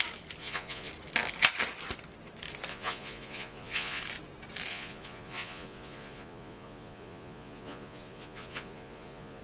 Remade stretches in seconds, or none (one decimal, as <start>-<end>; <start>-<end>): 0.4-0.9; 2.7-4.0; 4.7-9.4